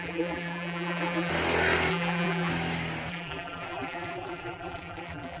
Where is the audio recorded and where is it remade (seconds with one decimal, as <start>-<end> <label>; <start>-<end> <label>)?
0.0-1.3 remade; 1.3-1.9 recorded; 1.9-2.5 remade; 2.5-3.1 recorded; 3.1-5.4 remade